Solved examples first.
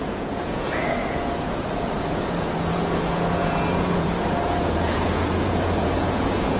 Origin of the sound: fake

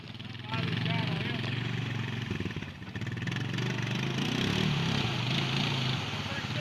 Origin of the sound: real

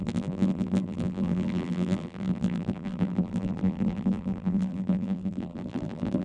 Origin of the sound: fake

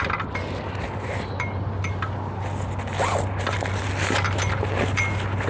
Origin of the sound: real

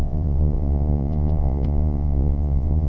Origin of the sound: fake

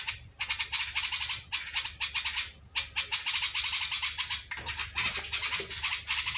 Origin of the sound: real